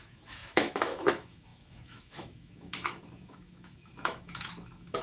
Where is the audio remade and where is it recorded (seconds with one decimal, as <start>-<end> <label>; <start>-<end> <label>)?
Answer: 0.0-5.0 remade